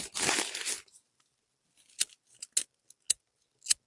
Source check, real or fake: real